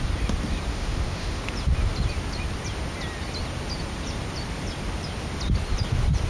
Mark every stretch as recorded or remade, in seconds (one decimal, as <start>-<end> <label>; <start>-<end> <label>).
0.0-0.7 recorded; 0.7-1.4 remade; 1.4-6.3 recorded